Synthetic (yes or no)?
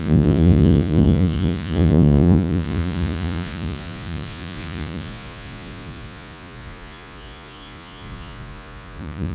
yes